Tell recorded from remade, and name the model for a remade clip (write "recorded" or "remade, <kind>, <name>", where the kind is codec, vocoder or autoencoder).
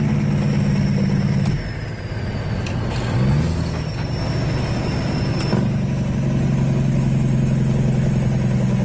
recorded